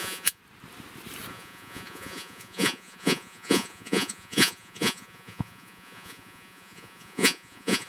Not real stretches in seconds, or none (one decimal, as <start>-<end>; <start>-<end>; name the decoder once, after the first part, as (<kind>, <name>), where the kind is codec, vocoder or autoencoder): 0.0-0.4 (vocoder, Vocos); 1.3-7.9

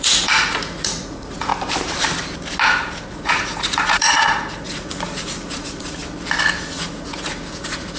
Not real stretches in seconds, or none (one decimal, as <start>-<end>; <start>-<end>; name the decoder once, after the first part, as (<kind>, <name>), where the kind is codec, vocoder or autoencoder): 0.0-1.5 (vocoder, Vocos); 3.1-6.0; 6.6-8.0

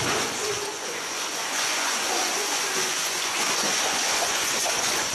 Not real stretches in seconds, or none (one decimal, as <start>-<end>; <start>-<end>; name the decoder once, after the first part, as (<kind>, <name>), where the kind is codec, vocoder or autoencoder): 0.0-5.1 (vocoder, Vocos)